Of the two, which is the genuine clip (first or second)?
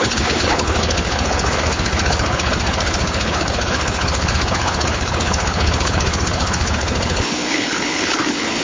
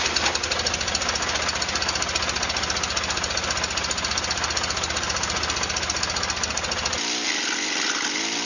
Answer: second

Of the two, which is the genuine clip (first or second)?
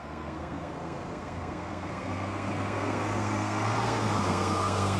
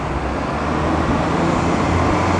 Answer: second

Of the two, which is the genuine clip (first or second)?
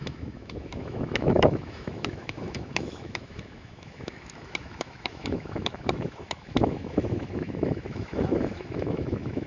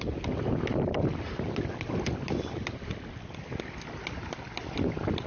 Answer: second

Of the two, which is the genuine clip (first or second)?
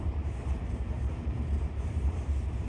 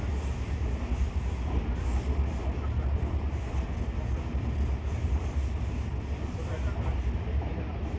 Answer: second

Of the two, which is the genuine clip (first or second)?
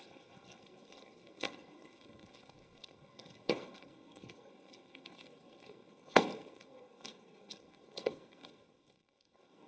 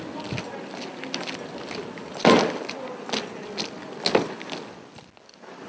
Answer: second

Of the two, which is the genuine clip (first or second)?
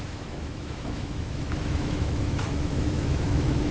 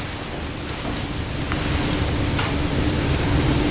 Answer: second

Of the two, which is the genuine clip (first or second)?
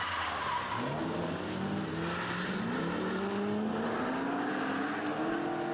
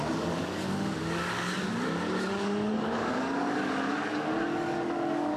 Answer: first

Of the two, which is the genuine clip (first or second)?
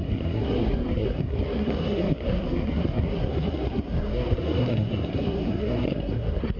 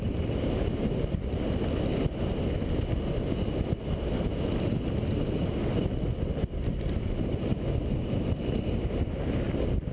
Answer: second